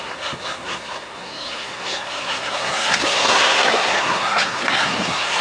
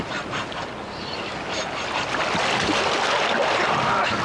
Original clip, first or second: second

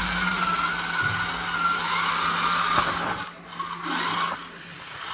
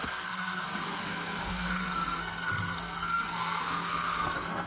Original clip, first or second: first